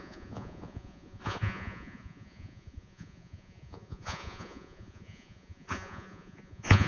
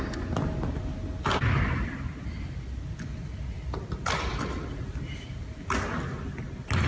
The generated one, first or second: first